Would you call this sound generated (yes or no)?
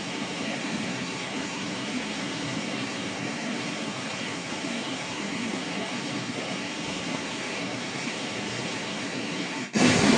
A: yes